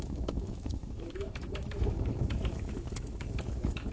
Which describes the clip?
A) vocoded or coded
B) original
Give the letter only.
A